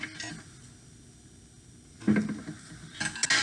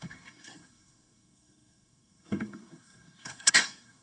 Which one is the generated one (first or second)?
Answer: second